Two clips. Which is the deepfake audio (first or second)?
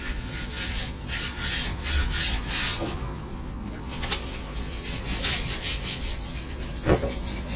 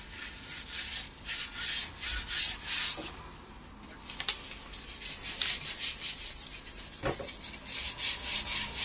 first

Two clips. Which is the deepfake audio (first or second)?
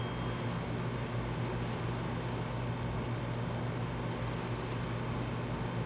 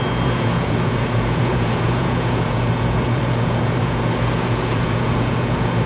second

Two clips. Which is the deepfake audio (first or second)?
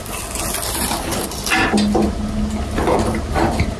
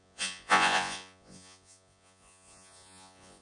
second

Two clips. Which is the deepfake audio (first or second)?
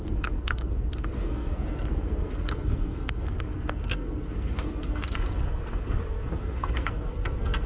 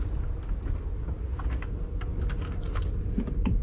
first